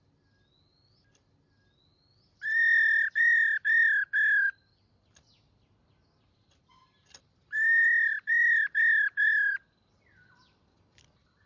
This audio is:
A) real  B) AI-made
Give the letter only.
A